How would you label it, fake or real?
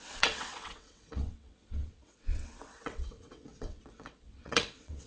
fake